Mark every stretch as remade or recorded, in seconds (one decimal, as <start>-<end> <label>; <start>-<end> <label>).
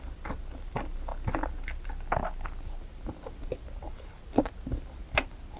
0.0-5.6 recorded